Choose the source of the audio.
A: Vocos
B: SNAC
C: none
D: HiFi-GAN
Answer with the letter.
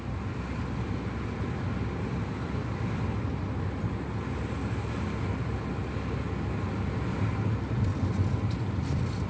C